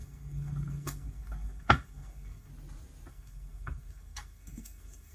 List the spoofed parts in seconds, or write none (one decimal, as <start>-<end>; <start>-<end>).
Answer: 0.0-2.5; 3.1-5.1